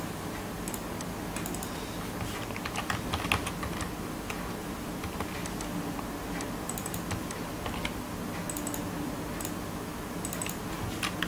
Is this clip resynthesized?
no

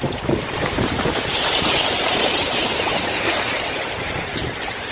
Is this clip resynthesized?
yes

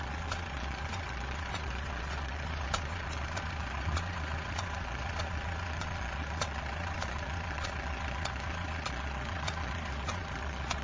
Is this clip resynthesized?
yes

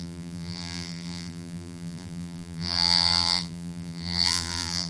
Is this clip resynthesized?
yes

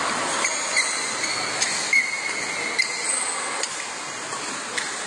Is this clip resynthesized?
no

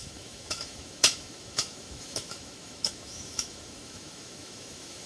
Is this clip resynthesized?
yes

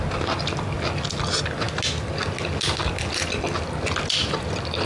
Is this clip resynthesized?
no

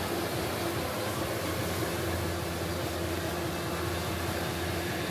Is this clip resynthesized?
no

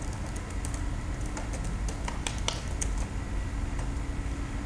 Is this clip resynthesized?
no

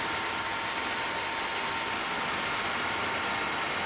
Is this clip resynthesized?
no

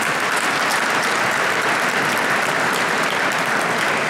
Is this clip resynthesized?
no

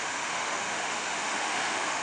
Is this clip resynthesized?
yes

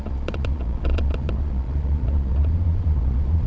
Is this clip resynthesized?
yes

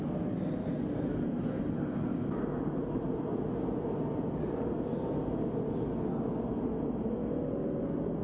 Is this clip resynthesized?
no